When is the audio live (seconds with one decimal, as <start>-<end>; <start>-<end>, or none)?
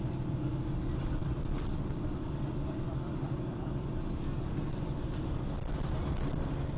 0.0-6.8